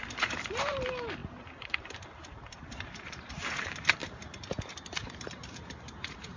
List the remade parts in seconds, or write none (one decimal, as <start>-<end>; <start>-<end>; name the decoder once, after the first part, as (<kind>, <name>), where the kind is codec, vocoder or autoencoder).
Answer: 0.0-6.4 (vocoder, BigVGAN v2)